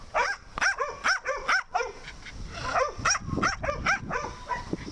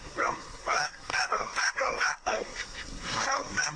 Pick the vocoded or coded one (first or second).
second